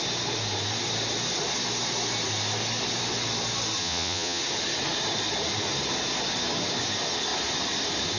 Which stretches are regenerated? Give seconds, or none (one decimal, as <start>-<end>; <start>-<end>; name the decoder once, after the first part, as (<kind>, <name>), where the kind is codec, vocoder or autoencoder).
3.8-4.4 (vocoder, Vocos)